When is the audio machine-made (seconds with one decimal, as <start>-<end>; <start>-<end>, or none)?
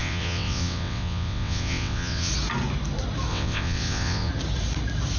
0.0-2.3; 3.3-4.3